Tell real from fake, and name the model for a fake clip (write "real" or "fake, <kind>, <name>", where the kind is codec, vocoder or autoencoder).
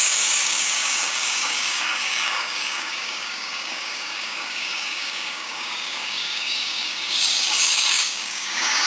fake, codec, DAC